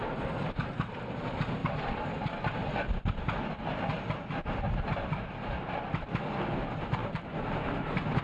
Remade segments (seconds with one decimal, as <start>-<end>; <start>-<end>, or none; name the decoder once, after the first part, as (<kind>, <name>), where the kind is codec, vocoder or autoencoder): 7.0-8.2 (vocoder, BigVGAN v2)